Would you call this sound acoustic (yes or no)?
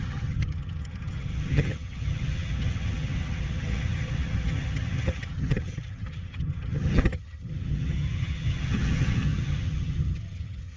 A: no